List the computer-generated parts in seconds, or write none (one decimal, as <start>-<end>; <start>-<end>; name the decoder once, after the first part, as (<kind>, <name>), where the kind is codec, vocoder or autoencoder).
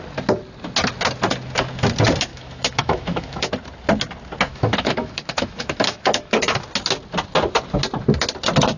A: 2.3-3.5 (autoencoder, DAC-VAE); 4.5-6.4